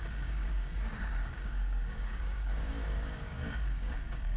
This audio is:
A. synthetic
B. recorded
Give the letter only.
A